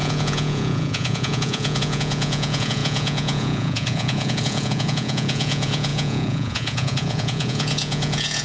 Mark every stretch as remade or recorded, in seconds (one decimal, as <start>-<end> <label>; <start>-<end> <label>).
0.0-8.4 remade